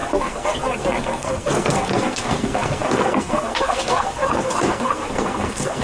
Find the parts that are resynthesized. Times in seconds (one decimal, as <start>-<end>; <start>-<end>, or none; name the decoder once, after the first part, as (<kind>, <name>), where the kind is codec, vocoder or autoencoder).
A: 0.0-5.8 (codec, SNAC)